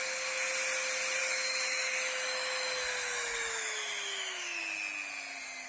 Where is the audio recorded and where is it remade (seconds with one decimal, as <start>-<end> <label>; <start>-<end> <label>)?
0.0-1.2 recorded; 1.2-4.6 remade; 4.6-5.7 recorded